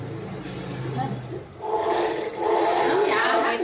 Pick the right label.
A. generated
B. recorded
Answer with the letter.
B